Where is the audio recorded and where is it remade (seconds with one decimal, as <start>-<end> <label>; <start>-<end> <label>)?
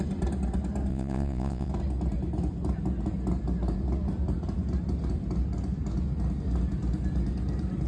0.0-0.9 recorded; 0.9-1.7 remade; 1.7-7.9 recorded